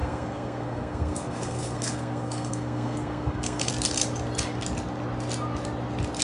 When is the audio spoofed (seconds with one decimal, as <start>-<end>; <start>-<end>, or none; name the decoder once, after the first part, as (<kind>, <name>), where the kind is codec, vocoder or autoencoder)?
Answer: 0.0-3.7 (codec, SNAC)